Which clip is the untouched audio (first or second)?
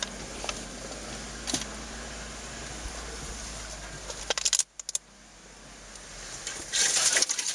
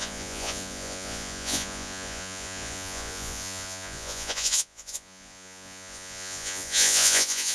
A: first